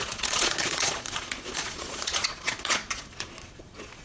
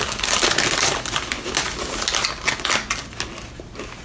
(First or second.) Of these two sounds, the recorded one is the second